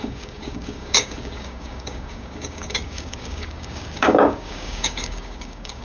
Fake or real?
fake